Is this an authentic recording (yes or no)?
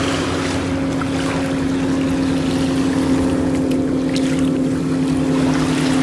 yes